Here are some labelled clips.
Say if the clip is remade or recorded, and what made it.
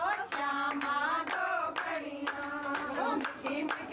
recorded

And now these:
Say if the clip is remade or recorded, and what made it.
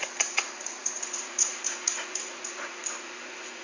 remade, vocoder, Vocos